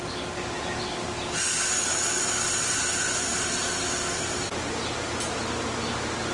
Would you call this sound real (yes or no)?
yes